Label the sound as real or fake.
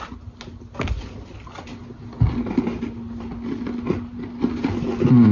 real